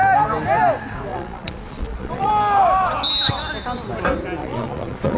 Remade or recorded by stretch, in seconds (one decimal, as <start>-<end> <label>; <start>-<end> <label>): 0.0-1.1 recorded; 1.1-2.3 remade; 2.3-4.4 recorded; 4.4-5.2 remade